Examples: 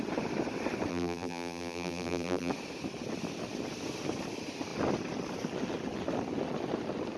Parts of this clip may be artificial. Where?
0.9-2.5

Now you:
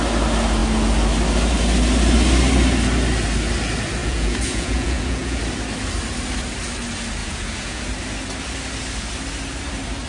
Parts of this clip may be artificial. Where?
4.0-5.4; 7.2-7.8

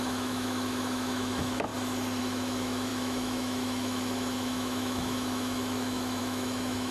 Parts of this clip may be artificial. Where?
0.0-1.7; 2.2-6.9

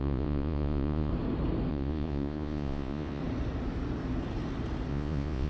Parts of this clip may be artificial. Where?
0.0-1.1; 1.7-3.2; 4.9-5.5

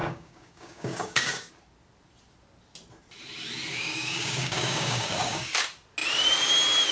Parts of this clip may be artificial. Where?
0.0-1.5; 3.7-5.5